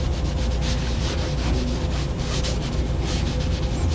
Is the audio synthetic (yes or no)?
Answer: no